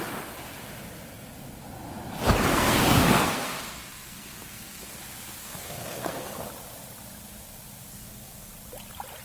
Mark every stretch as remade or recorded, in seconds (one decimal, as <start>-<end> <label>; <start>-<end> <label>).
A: 0.0-2.5 recorded; 2.5-5.0 remade; 5.0-5.4 recorded; 5.4-6.5 remade; 6.5-7.9 recorded; 7.9-8.5 remade; 8.5-9.2 recorded